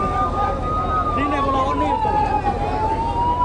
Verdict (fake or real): real